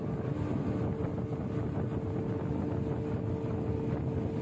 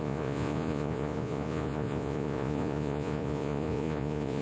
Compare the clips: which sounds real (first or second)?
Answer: first